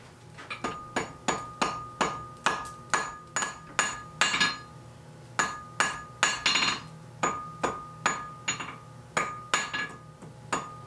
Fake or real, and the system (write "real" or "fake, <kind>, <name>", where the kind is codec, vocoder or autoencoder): real